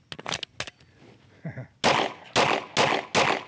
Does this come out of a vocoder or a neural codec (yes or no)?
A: no